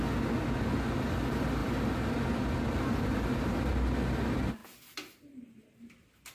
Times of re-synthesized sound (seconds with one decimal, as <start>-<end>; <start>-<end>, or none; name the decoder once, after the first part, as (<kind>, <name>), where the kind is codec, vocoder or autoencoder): none